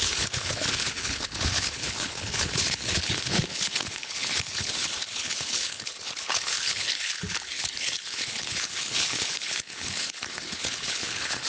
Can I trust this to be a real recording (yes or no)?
no